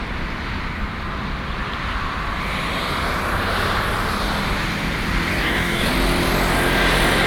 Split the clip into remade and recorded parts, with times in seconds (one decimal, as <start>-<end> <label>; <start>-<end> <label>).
0.0-5.3 recorded; 5.3-5.9 remade; 5.9-7.3 recorded